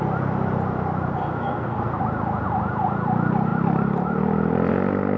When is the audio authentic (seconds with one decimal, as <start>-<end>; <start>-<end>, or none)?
0.0-1.2; 2.0-5.2